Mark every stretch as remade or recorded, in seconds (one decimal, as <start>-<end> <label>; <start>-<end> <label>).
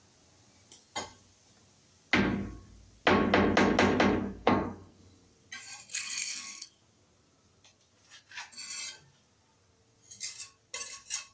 0.0-4.2 recorded; 4.2-5.0 remade; 5.0-5.9 recorded; 5.9-6.7 remade; 6.7-11.3 recorded